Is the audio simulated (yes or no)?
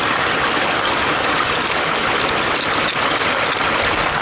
no